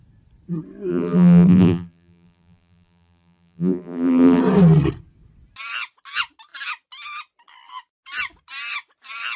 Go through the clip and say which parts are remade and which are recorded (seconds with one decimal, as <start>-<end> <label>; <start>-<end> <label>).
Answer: 0.0-0.9 recorded; 0.9-4.4 remade; 4.4-9.4 recorded